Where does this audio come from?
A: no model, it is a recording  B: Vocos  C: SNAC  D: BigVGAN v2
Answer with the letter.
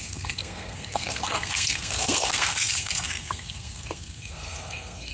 C